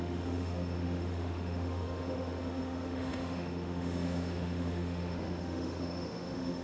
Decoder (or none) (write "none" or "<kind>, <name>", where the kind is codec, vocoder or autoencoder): autoencoder, DAC-VAE